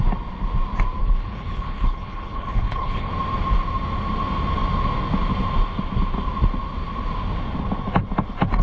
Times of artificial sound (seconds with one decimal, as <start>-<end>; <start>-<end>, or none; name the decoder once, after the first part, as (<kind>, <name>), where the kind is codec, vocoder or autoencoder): 1.0-3.1 (codec, HILCodec)